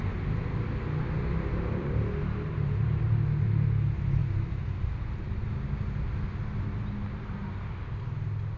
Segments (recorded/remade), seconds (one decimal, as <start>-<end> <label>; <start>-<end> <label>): 0.0-8.6 recorded